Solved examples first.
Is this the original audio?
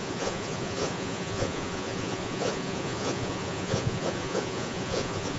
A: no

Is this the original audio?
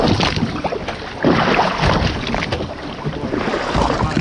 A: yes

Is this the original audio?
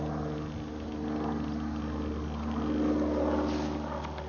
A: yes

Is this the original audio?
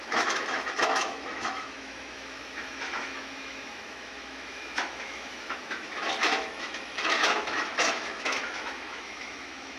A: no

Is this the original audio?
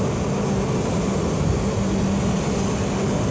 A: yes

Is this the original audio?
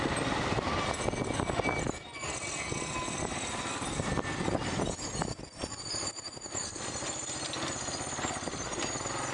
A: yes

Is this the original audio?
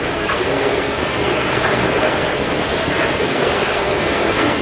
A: no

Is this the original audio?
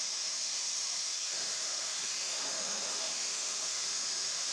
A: no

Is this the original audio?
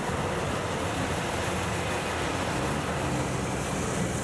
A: yes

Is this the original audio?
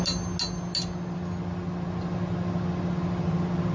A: yes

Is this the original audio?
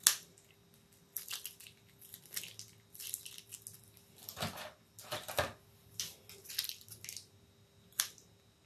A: yes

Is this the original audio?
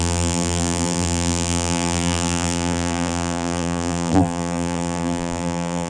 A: no